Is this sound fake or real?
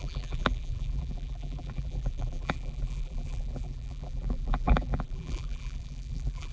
fake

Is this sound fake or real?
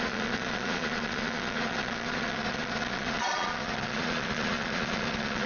fake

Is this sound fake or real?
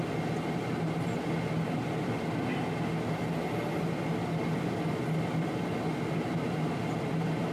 real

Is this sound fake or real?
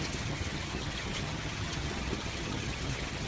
fake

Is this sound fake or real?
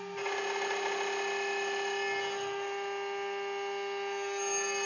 real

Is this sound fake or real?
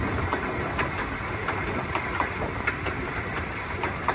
real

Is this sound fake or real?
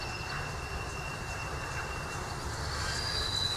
real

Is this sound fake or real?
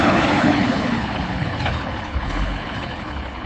fake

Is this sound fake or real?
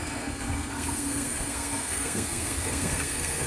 fake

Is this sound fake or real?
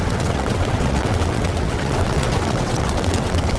fake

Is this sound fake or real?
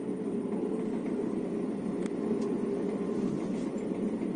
real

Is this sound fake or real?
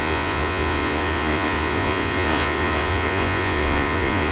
fake